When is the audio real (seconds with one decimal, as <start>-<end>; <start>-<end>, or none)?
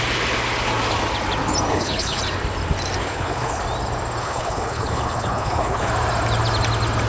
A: 0.0-1.7; 2.2-3.0; 3.6-4.2; 5.9-7.1